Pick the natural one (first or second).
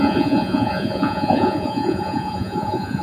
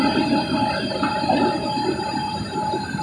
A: second